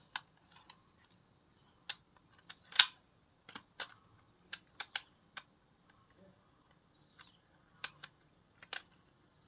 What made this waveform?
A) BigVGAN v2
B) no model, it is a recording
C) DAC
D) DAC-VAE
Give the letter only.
B